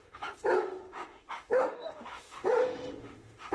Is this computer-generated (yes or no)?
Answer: yes